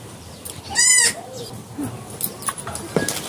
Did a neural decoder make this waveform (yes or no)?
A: no